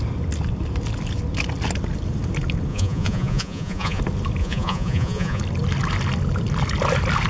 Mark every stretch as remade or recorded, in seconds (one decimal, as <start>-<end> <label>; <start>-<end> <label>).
0.0-2.7 recorded; 2.7-4.0 remade; 4.0-4.4 recorded; 4.4-5.4 remade; 5.4-7.3 recorded